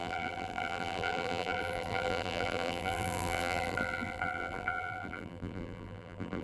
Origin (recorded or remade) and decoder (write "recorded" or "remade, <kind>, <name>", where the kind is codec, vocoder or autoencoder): remade, vocoder, BigVGAN v2